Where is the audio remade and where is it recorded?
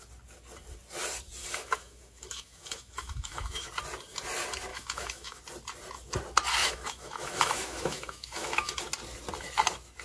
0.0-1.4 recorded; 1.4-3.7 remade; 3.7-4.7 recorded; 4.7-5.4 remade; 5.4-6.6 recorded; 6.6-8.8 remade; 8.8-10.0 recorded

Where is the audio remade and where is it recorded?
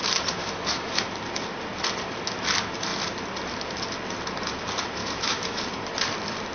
0.0-0.4 recorded; 0.4-1.0 remade; 1.0-5.0 recorded; 5.0-5.6 remade; 5.6-6.5 recorded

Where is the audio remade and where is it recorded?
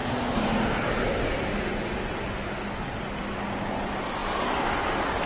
0.0-5.3 recorded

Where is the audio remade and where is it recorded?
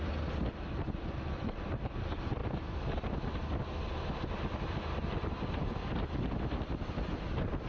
0.0-7.7 recorded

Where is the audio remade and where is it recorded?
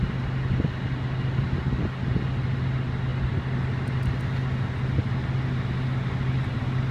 0.0-6.9 recorded